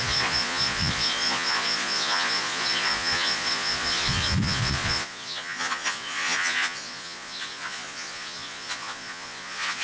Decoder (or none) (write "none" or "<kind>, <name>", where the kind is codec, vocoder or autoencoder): vocoder, Vocos